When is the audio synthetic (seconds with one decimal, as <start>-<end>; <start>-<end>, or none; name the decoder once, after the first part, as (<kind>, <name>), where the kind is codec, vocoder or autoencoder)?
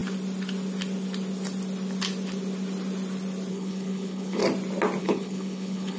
3.5-4.4 (codec, HILCodec); 5.0-6.0